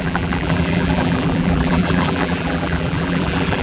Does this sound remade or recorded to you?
remade